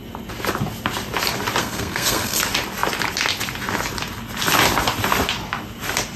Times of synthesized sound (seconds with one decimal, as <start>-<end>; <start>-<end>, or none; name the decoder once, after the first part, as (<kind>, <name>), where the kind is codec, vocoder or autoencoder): 1.6-2.4 (codec, SNAC)